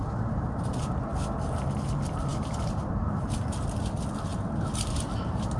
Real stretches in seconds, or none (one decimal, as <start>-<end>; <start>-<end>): 0.0-5.6